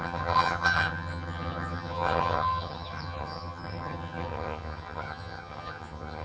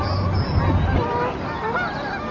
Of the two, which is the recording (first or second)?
second